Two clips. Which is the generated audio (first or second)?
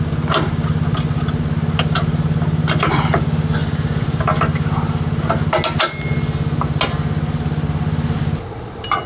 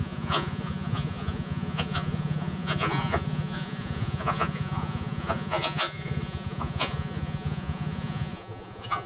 second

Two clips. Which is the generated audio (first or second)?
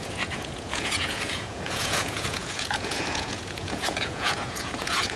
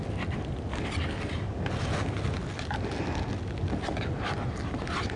first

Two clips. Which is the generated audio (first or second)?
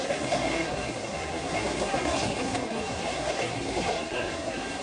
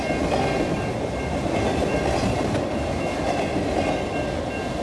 first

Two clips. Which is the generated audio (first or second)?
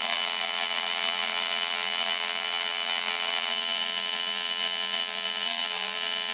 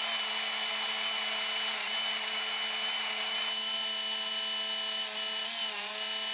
first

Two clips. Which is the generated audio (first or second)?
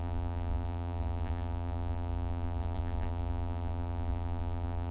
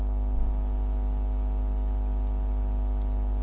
first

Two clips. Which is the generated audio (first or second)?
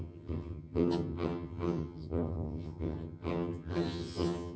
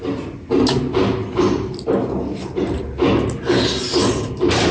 first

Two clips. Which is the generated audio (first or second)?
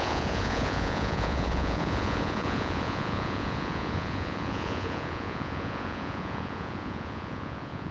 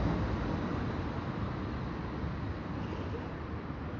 first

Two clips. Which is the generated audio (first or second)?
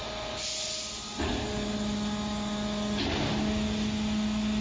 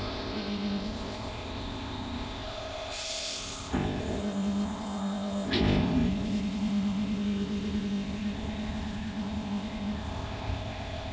second